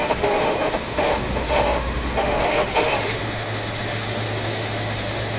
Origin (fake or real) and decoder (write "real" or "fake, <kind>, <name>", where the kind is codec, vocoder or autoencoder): fake, autoencoder, DAC-VAE